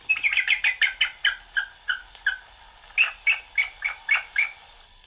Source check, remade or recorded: recorded